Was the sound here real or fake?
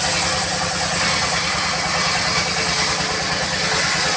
real